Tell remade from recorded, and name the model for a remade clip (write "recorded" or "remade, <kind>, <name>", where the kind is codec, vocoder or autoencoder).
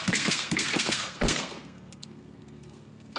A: remade, codec, SNAC